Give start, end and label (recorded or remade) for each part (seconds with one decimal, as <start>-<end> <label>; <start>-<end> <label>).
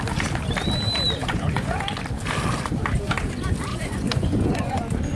0.0-1.2 recorded; 1.2-1.8 remade; 1.8-3.7 recorded; 3.7-4.8 remade; 4.8-5.2 recorded